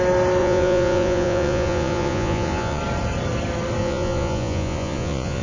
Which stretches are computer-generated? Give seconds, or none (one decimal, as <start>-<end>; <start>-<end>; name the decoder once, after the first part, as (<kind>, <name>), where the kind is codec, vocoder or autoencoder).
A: 0.4-2.8 (vocoder, Vocos); 3.8-5.4